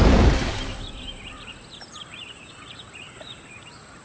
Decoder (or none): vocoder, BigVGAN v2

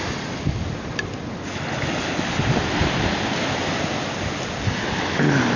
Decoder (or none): none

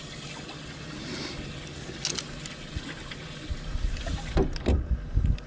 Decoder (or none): none